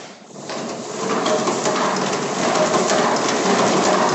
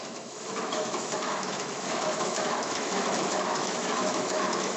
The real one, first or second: first